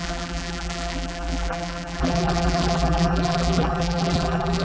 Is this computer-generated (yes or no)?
yes